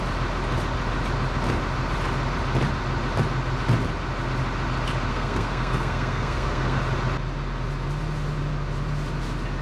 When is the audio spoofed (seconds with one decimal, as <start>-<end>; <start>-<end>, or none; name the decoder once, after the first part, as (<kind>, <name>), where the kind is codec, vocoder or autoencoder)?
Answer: 5.1-6.8 (codec, SNAC)